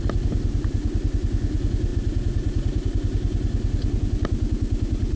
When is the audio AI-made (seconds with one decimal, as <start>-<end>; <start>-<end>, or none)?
none